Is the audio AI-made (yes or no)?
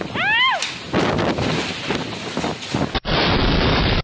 no